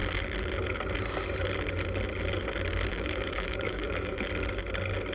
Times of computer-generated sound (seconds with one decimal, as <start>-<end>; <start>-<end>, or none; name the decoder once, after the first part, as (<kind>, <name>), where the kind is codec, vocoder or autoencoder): 2.9-4.2 (autoencoder, DAC-VAE)